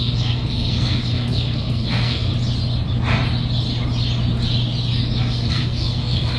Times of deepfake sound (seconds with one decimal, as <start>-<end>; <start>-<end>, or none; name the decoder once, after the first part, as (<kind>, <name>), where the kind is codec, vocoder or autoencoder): 0.0-2.3 (codec, SNAC); 5.2-6.4